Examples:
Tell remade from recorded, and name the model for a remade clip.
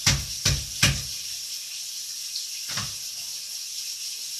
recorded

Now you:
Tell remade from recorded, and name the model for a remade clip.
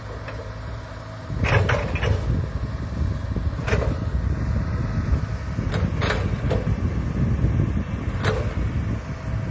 recorded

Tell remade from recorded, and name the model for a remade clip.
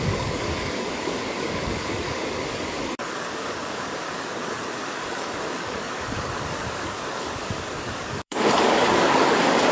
remade, codec, DAC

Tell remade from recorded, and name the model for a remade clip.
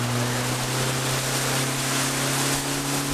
recorded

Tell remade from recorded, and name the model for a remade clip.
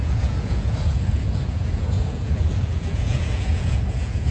remade, vocoder, Vocos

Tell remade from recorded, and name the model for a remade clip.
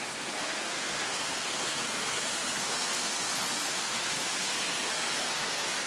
remade, codec, SNAC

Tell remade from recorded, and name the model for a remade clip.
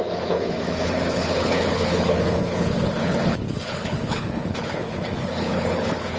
remade, codec, HILCodec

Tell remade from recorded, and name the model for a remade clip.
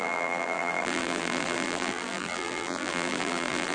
remade, vocoder, BigVGAN v2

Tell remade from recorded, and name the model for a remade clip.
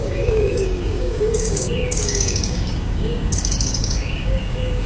remade, codec, DAC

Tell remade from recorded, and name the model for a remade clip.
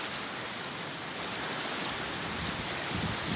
recorded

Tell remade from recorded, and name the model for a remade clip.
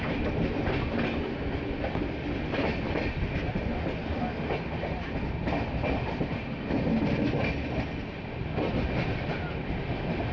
recorded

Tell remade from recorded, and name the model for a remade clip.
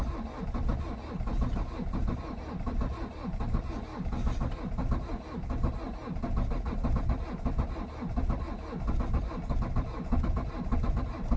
recorded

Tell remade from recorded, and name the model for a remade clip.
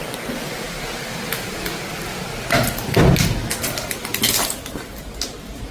recorded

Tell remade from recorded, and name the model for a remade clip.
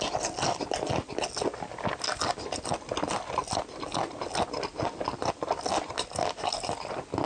recorded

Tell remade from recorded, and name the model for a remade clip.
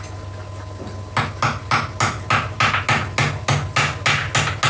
recorded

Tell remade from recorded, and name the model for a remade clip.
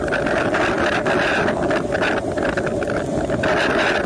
recorded